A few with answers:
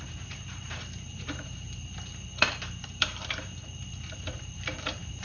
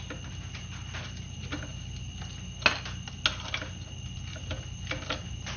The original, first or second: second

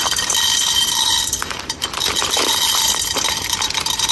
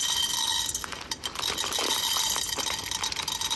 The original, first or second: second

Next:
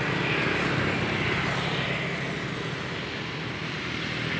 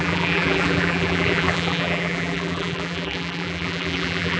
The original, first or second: first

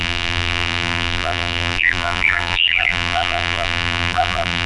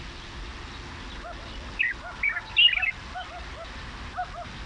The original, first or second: second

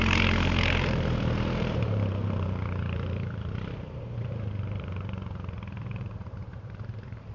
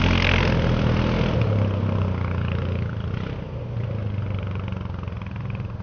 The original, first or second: second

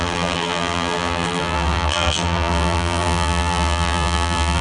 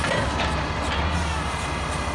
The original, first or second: second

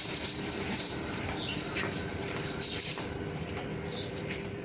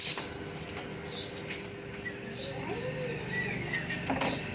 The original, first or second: second